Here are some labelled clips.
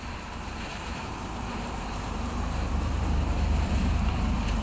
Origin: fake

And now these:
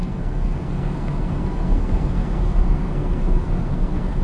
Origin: fake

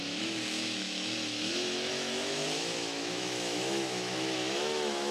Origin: fake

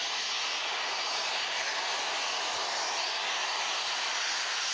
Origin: real